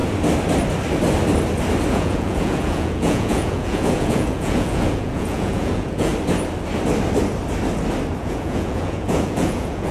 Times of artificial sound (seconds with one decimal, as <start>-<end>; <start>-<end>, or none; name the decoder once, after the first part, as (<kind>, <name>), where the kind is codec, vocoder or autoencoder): 1.9-6.1 (vocoder, Vocos); 8.2-9.9